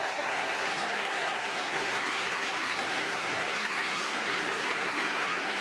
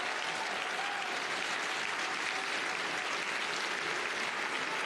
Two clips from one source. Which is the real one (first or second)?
second